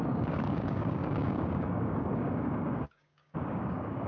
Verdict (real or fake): fake